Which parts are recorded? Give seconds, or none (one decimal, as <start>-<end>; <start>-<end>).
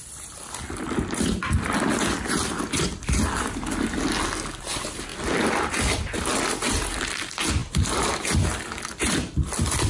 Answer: 0.0-4.6